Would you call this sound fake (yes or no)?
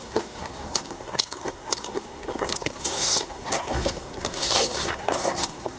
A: yes